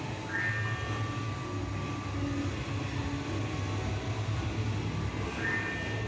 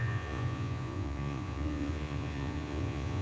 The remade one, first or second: second